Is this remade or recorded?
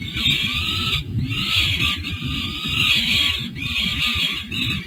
remade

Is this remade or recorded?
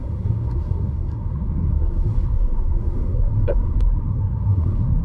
remade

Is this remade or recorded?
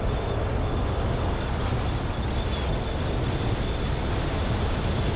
recorded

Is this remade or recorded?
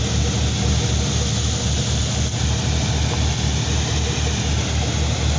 recorded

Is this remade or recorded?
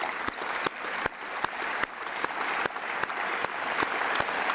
recorded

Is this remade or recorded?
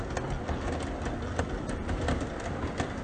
recorded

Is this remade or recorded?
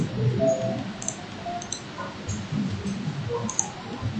recorded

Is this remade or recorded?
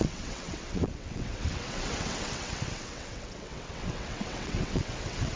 remade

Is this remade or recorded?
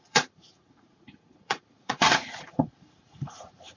remade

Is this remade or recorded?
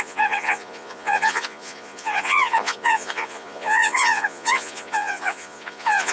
remade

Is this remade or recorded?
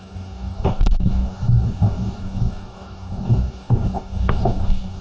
remade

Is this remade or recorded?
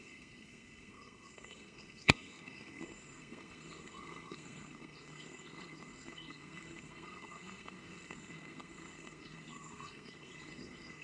remade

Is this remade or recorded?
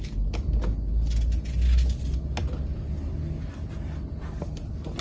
recorded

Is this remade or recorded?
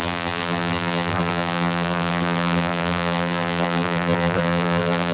remade